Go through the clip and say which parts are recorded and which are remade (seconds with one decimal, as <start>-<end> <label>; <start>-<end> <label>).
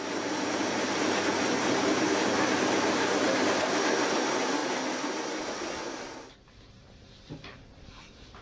0.0-8.4 recorded